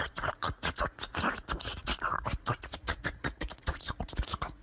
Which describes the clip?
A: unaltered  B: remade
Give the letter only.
B